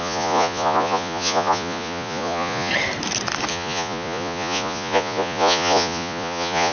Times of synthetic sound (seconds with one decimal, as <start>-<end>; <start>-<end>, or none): 0.0-2.7; 3.5-6.7